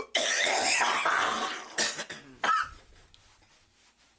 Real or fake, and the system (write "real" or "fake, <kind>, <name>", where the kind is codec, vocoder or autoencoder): real